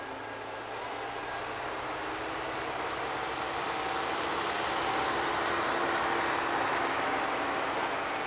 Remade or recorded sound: recorded